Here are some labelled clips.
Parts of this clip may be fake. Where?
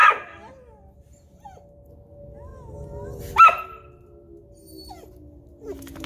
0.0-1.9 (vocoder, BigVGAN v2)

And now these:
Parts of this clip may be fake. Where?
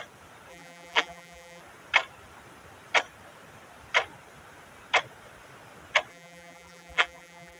0.5-1.6 (vocoder, BigVGAN v2); 6.1-7.6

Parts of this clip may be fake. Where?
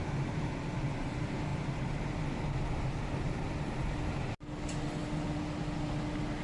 1.5-2.3 (vocoder, BigVGAN v2)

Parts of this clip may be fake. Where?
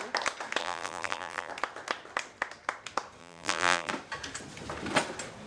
0.6-1.5 (vocoder, BigVGAN v2); 3.2-3.9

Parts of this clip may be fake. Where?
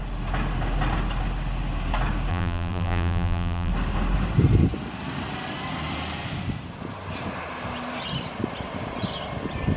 2.3-3.7 (vocoder, BigVGAN v2)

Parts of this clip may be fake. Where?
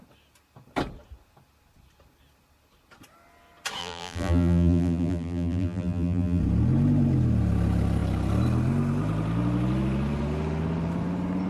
3.8-6.4 (vocoder, BigVGAN v2)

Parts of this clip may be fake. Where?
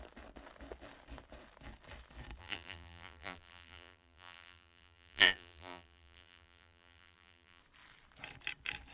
2.4-7.6 (vocoder, BigVGAN v2)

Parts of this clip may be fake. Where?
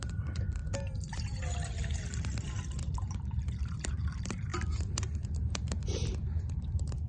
0.0-0.6 (vocoder, BigVGAN v2); 2.8-4.5; 5.6-6.1; 6.6-7.1